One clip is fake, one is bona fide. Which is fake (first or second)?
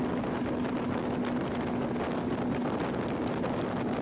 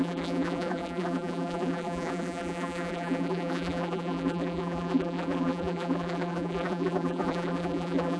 second